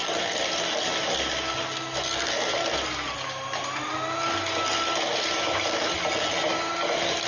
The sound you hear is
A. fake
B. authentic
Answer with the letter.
B